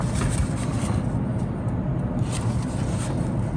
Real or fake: real